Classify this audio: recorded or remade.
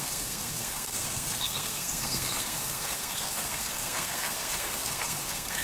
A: remade